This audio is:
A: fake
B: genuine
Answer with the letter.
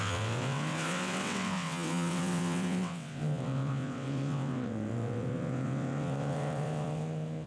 A